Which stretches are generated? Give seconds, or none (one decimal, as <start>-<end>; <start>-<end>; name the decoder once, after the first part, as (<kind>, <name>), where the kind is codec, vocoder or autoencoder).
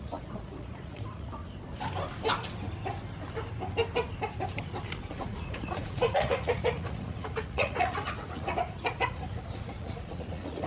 0.0-1.4 (vocoder, Vocos); 5.1-10.7